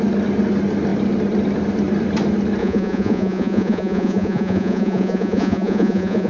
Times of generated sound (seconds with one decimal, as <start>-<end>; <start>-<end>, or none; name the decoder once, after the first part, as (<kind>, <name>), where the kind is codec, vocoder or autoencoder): 2.6-6.3 (vocoder, Vocos)